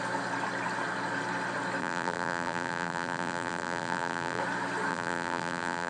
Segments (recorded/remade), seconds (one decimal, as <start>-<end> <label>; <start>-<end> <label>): 0.0-1.8 recorded; 1.8-4.4 remade; 4.4-4.9 recorded; 4.9-5.9 remade